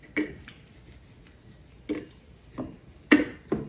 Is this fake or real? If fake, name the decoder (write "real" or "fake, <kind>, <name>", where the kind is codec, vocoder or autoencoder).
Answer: real